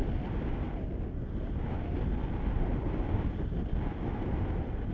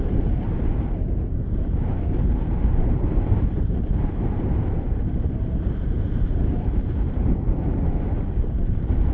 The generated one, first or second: second